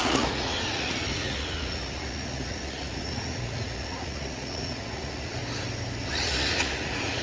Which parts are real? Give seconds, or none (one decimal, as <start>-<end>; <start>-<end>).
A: 5.4-6.1